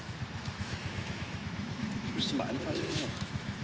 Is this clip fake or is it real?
fake